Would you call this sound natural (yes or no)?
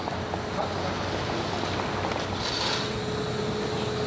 yes